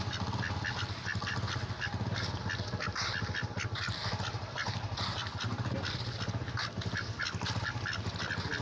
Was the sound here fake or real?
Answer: real